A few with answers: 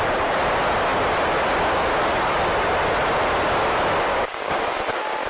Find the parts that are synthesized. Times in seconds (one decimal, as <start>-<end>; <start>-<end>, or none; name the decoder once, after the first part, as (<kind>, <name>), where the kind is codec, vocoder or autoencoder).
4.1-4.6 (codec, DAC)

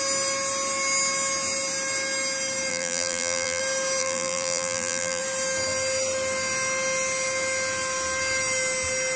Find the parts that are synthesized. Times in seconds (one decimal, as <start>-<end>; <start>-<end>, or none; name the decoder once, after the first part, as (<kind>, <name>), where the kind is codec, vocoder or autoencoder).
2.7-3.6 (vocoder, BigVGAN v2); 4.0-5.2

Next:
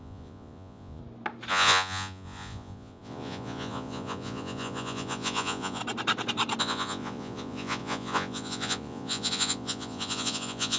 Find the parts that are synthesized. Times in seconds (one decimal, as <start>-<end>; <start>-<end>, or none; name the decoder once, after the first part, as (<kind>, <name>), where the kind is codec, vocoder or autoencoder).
0.0-1.0 (vocoder, Vocos); 1.5-5.8; 6.6-10.8

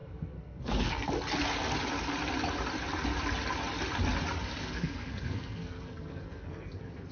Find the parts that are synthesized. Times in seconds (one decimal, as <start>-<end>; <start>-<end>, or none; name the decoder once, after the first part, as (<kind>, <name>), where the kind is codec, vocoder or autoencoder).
0.0-1.1 (codec, SNAC); 4.6-7.1

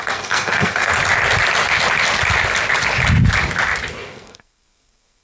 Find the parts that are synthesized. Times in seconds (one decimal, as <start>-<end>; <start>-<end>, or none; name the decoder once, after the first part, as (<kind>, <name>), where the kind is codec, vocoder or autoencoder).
0.0-0.9 (codec, SNAC); 3.9-5.2